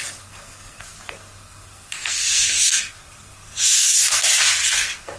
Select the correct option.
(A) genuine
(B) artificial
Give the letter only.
B